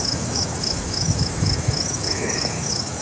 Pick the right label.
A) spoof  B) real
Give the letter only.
A